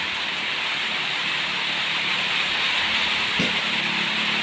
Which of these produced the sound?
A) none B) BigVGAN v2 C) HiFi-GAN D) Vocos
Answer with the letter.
A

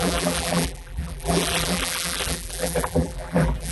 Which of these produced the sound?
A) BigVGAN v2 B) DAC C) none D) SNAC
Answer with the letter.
A